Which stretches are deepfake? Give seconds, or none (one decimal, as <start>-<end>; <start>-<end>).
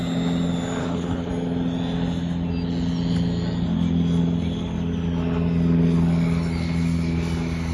0.8-1.3